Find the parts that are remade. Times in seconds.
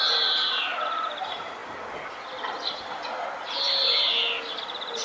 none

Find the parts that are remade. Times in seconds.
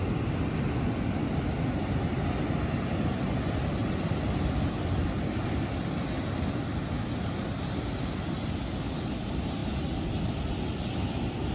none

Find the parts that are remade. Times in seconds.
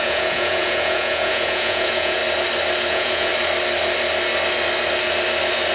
0.0-2.2 (vocoder, Vocos); 2.9-3.3